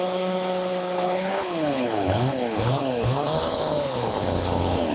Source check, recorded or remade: remade